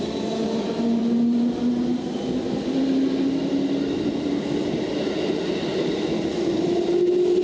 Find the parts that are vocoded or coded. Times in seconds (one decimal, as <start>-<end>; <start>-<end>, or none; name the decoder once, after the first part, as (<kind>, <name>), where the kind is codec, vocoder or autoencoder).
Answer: none